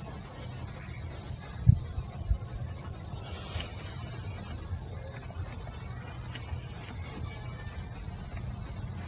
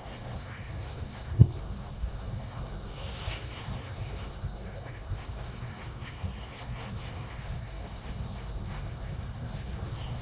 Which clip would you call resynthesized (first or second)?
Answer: second